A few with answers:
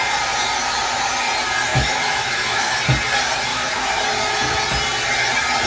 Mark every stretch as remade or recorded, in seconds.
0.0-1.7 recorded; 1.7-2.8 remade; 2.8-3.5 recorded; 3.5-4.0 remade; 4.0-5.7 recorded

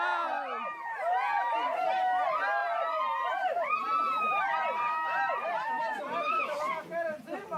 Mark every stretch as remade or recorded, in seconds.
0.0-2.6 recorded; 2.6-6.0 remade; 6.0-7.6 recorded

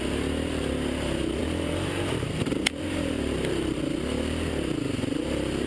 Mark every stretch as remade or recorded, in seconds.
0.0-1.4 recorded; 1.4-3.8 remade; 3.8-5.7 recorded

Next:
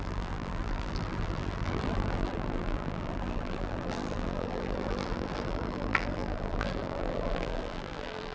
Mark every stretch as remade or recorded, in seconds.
0.0-8.3 remade

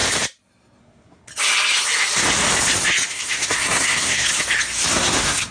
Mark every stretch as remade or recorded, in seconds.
0.0-0.8 recorded; 0.8-1.3 remade; 1.3-3.1 recorded; 3.1-4.3 remade; 4.3-4.9 recorded; 4.9-5.5 remade

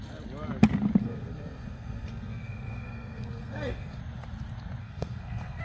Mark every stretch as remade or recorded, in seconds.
0.0-1.0 recorded; 1.0-4.0 remade; 4.0-4.8 recorded; 4.8-5.6 remade